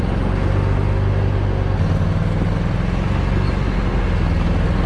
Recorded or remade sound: recorded